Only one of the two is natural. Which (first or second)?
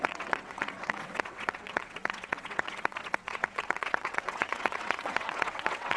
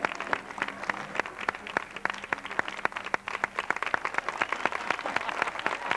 second